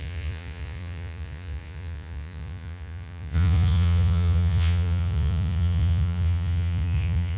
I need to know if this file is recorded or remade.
remade